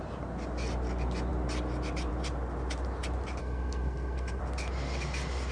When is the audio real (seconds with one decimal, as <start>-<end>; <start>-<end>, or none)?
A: 0.0-3.4; 4.4-5.5